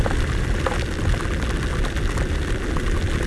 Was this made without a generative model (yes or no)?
yes